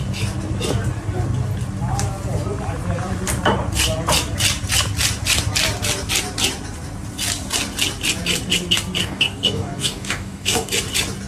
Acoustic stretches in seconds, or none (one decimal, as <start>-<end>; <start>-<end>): 0.0-9.0; 10.7-11.3